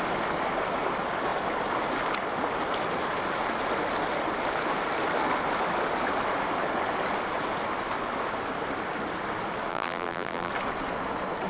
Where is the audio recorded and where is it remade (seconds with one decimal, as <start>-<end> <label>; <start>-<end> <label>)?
0.0-9.7 recorded; 9.7-10.5 remade; 10.5-11.5 recorded